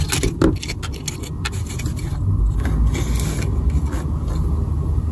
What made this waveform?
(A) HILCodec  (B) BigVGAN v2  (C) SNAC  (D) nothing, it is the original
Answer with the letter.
D